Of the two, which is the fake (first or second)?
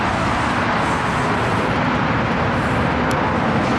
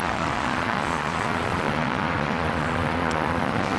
second